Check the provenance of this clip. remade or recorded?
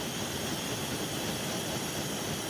recorded